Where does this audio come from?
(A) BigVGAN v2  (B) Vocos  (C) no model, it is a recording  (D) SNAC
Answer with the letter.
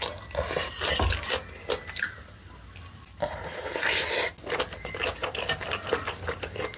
C